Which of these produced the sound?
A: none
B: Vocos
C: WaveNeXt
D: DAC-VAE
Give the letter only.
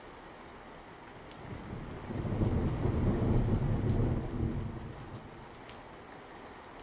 A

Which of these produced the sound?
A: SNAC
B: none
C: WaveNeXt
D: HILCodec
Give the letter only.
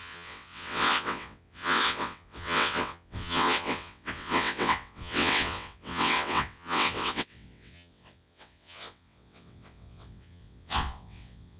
C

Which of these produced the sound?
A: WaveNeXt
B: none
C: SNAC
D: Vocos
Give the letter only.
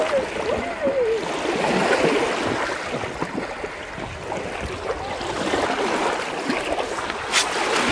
B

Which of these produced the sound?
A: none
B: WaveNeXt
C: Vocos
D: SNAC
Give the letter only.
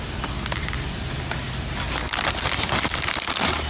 A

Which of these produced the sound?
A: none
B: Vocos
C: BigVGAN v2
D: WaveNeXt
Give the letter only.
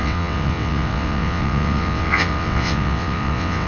D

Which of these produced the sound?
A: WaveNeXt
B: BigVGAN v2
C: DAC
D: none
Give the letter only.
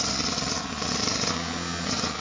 A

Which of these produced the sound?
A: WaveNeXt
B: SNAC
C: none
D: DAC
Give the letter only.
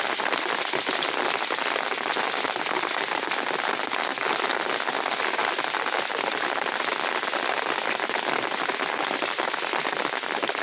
C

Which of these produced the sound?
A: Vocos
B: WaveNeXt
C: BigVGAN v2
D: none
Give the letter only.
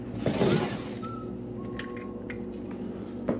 D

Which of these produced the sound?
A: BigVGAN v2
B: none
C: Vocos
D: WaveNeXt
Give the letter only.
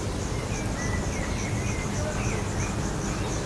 B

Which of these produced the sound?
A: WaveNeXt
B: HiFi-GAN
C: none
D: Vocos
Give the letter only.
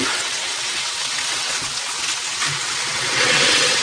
A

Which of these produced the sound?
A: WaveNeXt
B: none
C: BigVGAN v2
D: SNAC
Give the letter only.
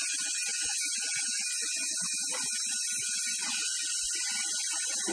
B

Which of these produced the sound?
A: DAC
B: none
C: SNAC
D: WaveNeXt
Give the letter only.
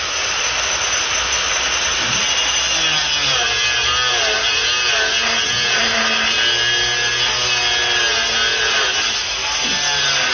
B